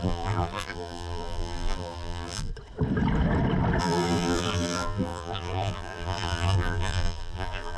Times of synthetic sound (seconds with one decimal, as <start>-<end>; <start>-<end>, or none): 0.0-2.5; 3.8-7.8

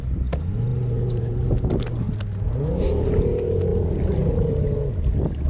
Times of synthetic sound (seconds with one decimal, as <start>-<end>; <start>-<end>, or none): none